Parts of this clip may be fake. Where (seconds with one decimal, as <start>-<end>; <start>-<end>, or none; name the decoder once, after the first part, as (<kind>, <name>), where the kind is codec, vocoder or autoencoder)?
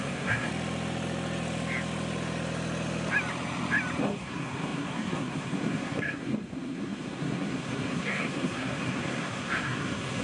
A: 0.0-0.5 (codec, SNAC); 4.0-10.2